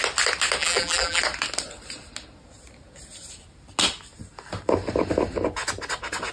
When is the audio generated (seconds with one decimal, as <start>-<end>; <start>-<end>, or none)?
0.6-1.2